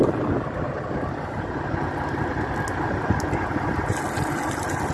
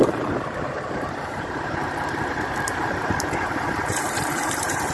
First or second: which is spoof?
second